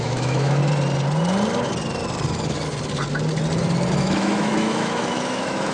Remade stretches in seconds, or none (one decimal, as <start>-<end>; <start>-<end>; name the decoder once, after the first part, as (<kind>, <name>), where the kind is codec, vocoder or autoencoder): 0.0-0.6 (autoencoder, DAC-VAE); 4.0-5.7

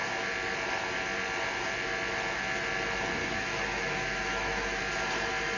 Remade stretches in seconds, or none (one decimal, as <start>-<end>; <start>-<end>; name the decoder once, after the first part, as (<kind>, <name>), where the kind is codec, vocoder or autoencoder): 3.2-4.8 (autoencoder, DAC-VAE)

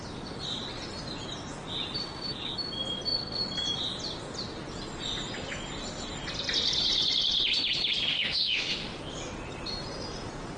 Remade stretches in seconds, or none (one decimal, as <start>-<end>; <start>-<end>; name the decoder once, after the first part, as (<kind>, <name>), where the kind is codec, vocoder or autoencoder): 8.1-9.0 (autoencoder, DAC-VAE)

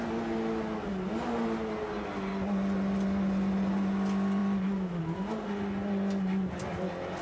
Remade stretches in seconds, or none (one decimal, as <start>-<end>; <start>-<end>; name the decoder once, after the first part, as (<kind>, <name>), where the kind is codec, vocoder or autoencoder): none

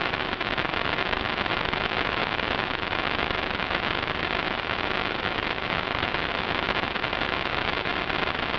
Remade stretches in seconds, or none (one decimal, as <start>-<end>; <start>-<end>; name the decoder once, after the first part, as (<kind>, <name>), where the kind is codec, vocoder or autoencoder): 0.0-7.9 (autoencoder, DAC-VAE)